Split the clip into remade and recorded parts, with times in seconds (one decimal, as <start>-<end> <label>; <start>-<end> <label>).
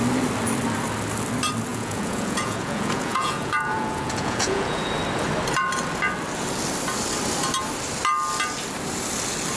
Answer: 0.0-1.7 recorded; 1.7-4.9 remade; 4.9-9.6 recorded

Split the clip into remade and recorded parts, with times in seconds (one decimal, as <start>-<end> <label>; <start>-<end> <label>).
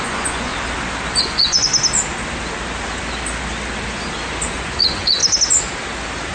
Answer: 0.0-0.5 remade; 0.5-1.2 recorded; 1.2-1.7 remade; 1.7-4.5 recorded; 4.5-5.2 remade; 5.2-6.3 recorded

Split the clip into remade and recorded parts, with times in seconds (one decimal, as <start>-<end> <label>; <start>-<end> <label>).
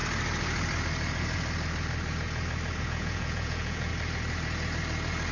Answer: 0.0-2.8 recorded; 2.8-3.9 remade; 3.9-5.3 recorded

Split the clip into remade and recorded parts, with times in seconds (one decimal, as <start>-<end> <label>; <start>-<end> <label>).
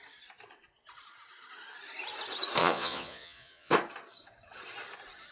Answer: 0.0-2.6 recorded; 2.6-3.7 remade; 3.7-5.3 recorded